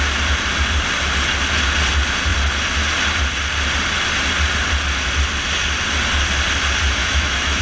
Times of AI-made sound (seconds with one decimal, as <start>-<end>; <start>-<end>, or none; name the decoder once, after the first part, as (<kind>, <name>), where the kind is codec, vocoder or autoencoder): 7.0-7.6 (autoencoder, DAC-VAE)